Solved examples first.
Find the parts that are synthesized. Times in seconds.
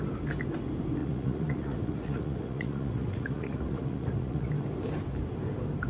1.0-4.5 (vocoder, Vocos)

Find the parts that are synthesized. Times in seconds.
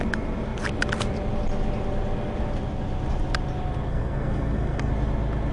3.9-4.9 (codec, SNAC)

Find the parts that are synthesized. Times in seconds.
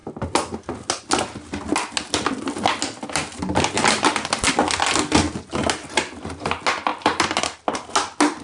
none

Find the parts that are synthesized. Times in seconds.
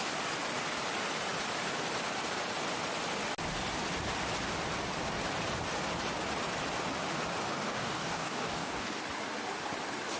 7.7-9.0 (codec, DAC)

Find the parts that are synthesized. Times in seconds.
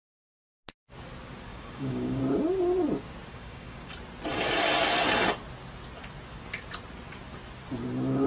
1.5-2.2 (codec, DAC); 3.3-3.9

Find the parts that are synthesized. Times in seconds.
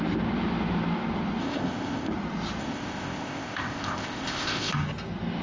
1.4-2.1 (codec, ZipCodec); 2.6-4.7